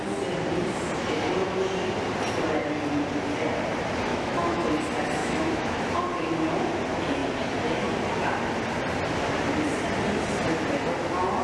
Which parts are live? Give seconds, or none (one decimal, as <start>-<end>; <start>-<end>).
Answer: 0.0-4.1; 4.7-5.2; 5.9-11.4